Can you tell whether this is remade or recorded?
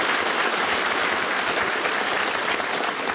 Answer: recorded